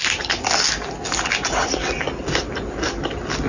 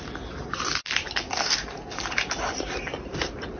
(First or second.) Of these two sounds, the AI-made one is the second